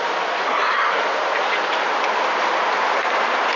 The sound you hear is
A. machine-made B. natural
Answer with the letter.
A